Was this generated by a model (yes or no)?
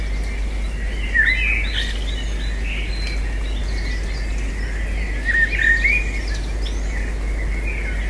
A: no